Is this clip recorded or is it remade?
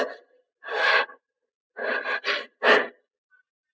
recorded